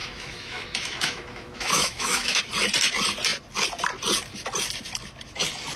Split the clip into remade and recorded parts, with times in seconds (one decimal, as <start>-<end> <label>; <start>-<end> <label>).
0.0-2.4 remade; 2.4-5.8 recorded